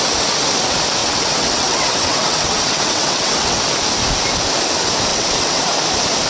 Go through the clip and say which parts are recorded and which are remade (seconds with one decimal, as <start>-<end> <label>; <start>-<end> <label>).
0.0-1.0 recorded; 1.0-3.6 remade; 3.6-5.1 recorded; 5.1-5.6 remade; 5.6-6.3 recorded